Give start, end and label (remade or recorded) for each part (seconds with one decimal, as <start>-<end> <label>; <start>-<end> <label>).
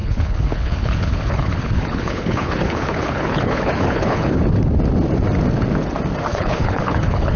0.0-4.4 remade; 4.4-6.3 recorded; 6.3-7.4 remade